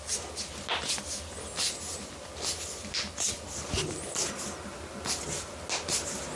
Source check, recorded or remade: recorded